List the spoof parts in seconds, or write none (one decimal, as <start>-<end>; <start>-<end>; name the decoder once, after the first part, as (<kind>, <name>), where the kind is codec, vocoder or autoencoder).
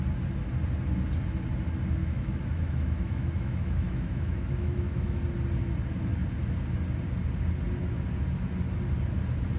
2.0-5.2 (autoencoder, DAC-VAE)